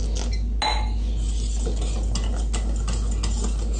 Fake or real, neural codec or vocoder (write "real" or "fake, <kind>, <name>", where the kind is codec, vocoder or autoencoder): real